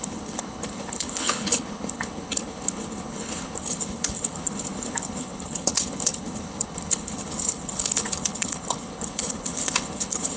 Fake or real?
fake